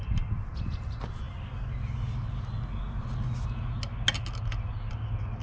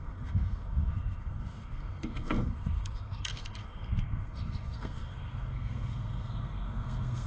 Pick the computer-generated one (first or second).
second